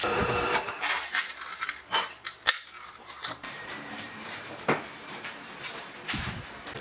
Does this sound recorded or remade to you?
remade